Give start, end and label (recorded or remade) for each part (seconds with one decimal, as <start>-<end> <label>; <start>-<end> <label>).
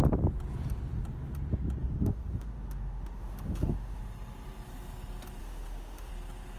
0.0-1.8 recorded; 1.8-4.0 remade; 4.0-5.4 recorded; 5.4-6.1 remade; 6.1-6.6 recorded